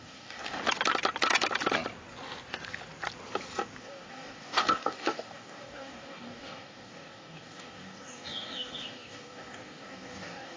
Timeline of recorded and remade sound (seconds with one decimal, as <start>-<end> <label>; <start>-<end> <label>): 0.0-0.6 remade; 0.6-3.8 recorded; 3.8-10.6 remade